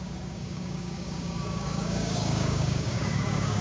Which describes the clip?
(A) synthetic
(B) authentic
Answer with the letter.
A